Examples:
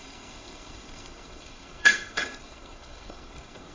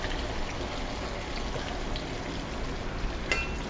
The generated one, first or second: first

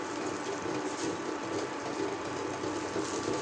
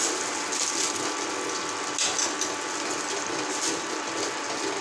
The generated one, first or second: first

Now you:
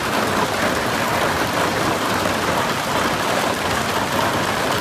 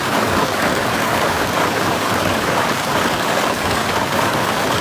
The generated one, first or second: second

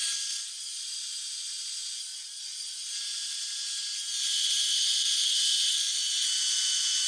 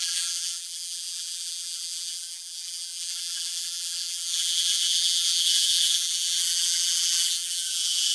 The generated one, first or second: second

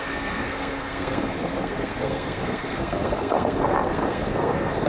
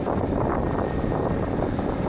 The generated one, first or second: first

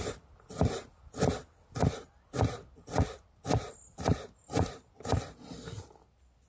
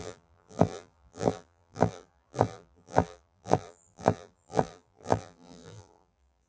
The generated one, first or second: second